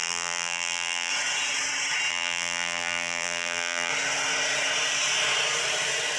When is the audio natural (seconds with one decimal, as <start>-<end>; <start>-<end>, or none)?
1.1-2.1; 3.9-6.2